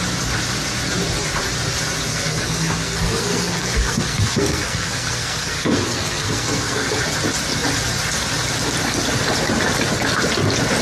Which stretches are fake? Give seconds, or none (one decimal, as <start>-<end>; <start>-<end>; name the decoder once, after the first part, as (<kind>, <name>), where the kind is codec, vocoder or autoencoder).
2.1-7.0 (codec, SNAC)